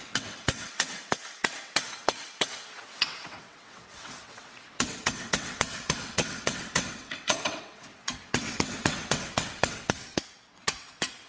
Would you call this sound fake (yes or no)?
yes